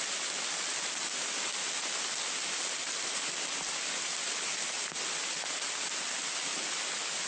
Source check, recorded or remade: recorded